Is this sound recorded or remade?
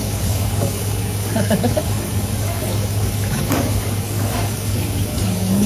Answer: remade